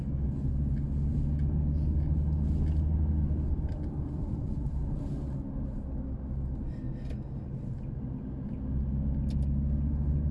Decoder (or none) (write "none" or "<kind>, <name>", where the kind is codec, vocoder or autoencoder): none